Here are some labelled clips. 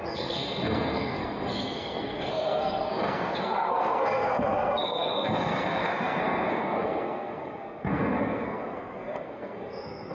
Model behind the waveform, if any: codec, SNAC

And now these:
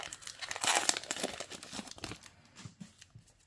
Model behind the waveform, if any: none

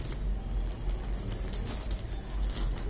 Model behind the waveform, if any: none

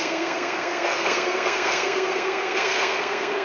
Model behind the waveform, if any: codec, SNAC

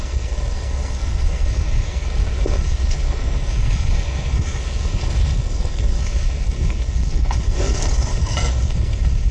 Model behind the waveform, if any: codec, SNAC